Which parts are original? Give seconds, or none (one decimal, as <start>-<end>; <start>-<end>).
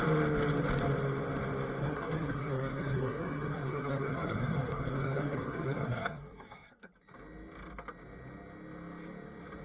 0.0-1.8; 6.9-9.6